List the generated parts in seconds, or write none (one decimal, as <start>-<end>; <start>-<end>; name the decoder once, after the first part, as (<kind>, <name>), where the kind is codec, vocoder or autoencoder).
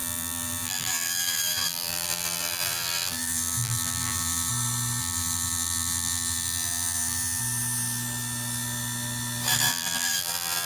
0.0-4.5 (vocoder, BigVGAN v2); 5.0-7.4; 9.7-10.7